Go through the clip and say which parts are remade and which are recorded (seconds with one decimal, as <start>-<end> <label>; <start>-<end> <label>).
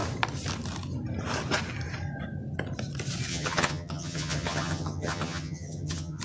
0.0-3.3 recorded; 3.3-6.2 remade